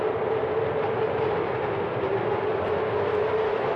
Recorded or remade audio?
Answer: recorded